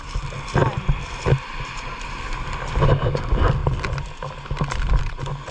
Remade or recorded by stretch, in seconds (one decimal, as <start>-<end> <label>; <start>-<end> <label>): 0.0-5.5 recorded